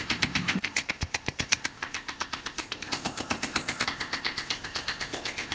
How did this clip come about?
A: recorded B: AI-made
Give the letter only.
B